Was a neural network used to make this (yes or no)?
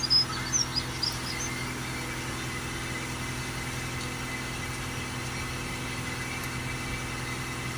no